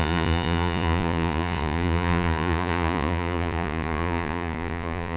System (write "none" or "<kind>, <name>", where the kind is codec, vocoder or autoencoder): vocoder, Vocos